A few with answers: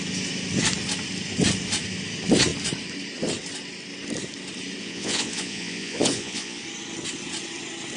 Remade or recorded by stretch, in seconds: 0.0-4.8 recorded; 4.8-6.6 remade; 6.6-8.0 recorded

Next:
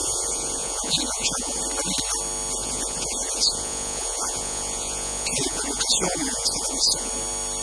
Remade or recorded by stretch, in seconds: 0.0-1.6 remade; 1.6-2.6 recorded; 2.6-7.1 remade; 7.1-7.6 recorded

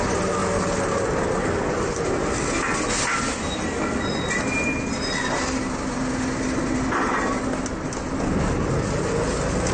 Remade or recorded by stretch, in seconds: 0.0-9.7 recorded

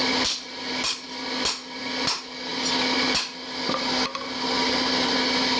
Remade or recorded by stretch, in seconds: 0.0-1.2 remade; 1.2-5.6 recorded

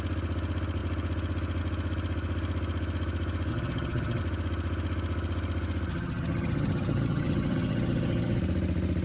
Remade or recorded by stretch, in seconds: 0.0-3.5 recorded; 3.5-4.2 remade; 4.2-5.9 recorded; 5.9-8.4 remade; 8.4-9.0 recorded